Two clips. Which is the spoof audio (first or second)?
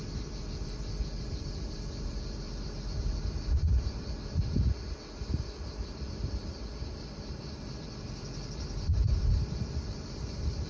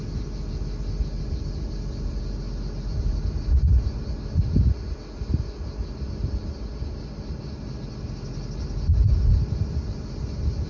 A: first